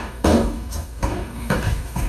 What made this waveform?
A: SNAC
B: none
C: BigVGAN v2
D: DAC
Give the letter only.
D